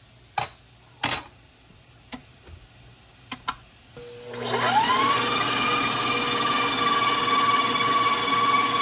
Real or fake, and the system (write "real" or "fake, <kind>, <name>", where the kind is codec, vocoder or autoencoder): real